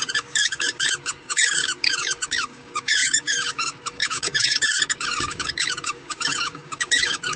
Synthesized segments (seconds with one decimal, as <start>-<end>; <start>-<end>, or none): 0.0-7.4